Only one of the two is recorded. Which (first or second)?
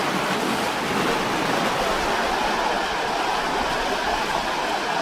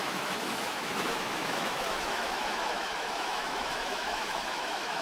first